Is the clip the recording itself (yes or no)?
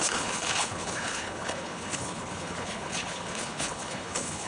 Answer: no